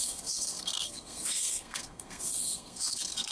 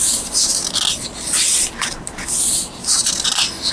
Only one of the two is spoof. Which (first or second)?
first